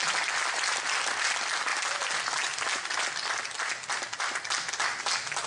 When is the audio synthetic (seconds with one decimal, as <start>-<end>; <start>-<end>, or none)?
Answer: none